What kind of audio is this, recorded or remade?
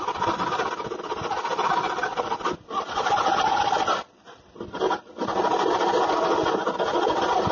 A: recorded